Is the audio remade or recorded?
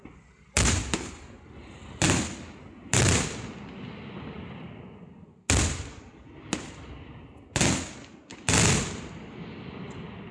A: recorded